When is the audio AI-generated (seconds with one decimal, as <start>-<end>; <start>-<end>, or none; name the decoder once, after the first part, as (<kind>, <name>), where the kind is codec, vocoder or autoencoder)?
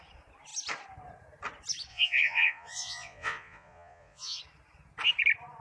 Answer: 1.9-4.4 (vocoder, Vocos)